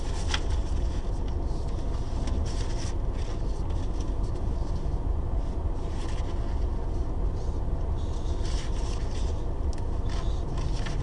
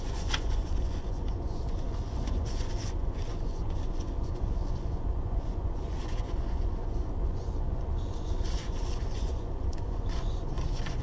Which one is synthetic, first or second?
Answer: second